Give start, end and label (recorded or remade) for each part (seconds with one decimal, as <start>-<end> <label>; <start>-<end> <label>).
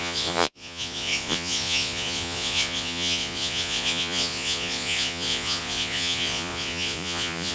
0.0-7.5 remade